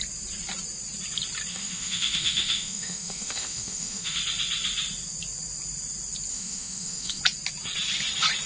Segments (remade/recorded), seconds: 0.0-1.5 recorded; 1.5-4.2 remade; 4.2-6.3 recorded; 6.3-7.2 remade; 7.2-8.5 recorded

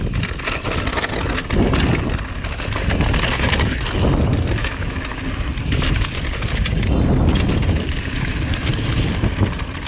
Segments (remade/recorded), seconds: 0.0-4.6 recorded; 4.6-5.2 remade; 5.2-9.9 recorded

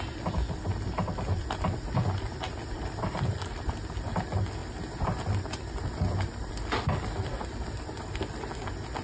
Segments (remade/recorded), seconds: 0.0-9.0 recorded

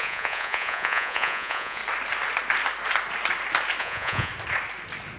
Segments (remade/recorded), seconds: 0.0-1.8 remade; 1.8-3.8 recorded; 3.8-4.3 remade; 4.3-5.2 recorded

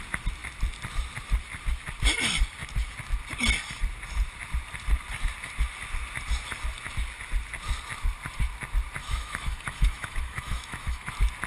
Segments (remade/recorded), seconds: 0.0-9.0 recorded; 9.0-11.1 remade; 11.1-11.5 recorded

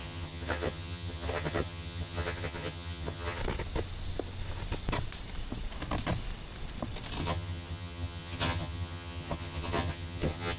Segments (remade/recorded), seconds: 0.0-3.4 remade; 3.4-7.2 recorded; 7.2-10.6 remade

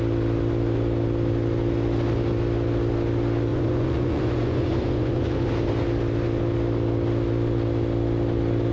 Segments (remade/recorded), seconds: 0.0-3.5 recorded; 3.5-5.5 remade; 5.5-8.7 recorded